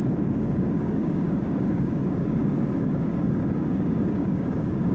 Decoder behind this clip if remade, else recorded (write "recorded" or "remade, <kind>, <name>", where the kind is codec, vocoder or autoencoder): remade, codec, DAC